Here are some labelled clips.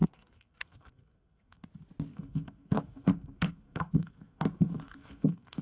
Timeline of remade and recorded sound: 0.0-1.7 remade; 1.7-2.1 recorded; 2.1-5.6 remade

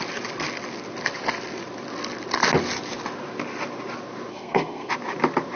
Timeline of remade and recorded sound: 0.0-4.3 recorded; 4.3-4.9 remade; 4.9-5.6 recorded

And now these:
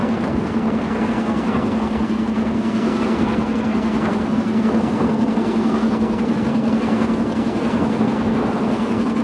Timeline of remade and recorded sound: 0.0-9.2 remade

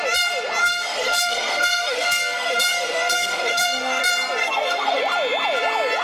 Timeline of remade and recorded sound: 0.0-0.6 recorded; 0.6-4.0 remade; 4.0-4.4 recorded; 4.4-5.0 remade; 5.0-6.0 recorded

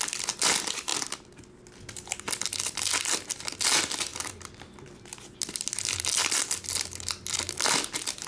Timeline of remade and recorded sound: 0.0-8.3 recorded